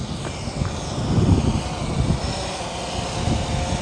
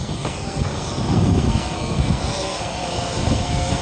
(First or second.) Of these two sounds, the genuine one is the first